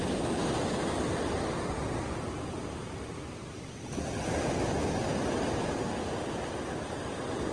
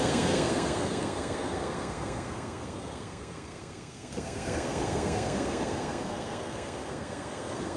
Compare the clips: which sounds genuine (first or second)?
first